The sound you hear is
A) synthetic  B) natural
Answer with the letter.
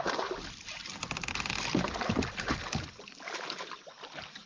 B